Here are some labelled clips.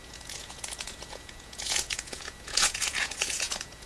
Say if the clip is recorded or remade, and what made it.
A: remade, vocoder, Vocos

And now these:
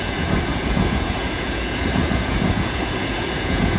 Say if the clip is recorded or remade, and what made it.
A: remade, vocoder, Vocos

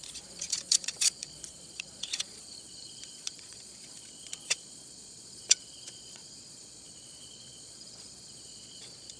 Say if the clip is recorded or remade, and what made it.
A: remade, vocoder, Vocos